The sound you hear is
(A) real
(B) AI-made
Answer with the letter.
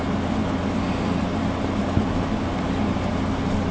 A